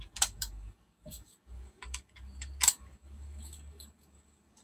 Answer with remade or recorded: remade